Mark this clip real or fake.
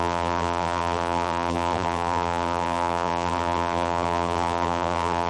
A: fake